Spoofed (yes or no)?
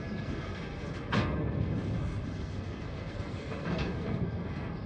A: yes